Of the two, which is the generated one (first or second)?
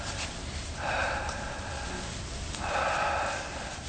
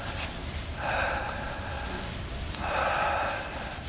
second